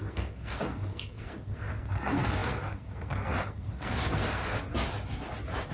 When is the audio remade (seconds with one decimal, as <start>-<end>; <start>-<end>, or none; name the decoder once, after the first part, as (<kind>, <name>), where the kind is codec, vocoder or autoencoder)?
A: 0.0-4.4 (codec, SNAC)